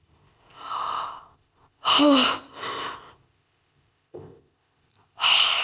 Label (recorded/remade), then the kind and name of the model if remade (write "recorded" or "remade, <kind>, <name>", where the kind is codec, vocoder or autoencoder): remade, codec, ZipCodec